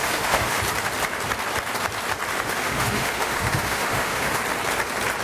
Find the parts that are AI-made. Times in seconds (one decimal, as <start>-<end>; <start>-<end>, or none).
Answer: 0.0-0.6; 2.3-4.4

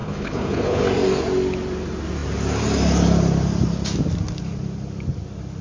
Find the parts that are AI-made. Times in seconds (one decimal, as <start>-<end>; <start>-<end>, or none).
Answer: 0.0-0.8

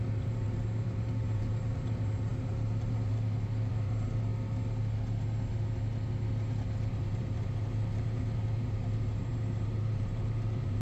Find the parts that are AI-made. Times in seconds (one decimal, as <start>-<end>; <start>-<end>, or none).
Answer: 0.0-4.3; 6.9-10.8

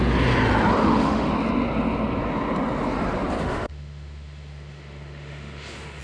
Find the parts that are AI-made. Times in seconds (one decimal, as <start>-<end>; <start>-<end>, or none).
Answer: 0.8-1.3; 3.4-6.0

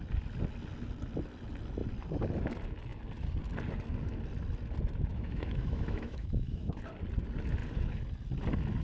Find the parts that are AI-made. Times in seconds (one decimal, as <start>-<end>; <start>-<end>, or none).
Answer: 5.1-6.8

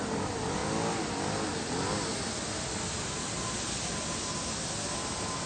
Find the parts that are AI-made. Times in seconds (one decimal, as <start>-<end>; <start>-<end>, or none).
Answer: none

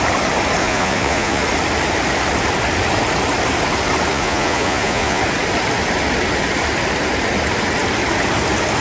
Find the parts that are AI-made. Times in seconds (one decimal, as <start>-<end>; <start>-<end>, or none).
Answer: 0.6-1.4; 4.1-5.2